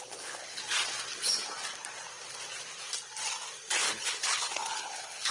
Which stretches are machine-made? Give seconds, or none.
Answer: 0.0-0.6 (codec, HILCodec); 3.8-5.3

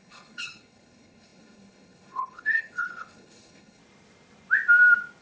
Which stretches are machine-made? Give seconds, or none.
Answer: 0.0-3.8 (codec, HILCodec)

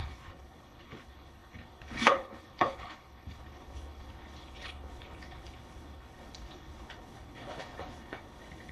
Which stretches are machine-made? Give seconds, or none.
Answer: 0.0-8.7 (codec, HILCodec)

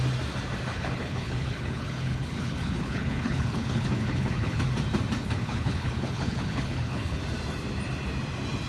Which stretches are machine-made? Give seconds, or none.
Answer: 0.7-4.6 (codec, HILCodec); 5.2-7.2

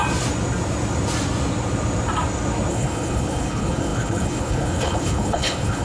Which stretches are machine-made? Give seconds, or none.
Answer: 2.7-5.8 (codec, HILCodec)